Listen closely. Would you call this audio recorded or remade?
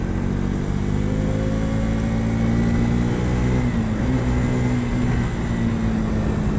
recorded